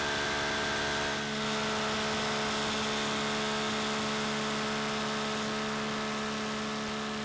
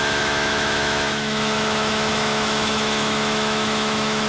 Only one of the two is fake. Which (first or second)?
second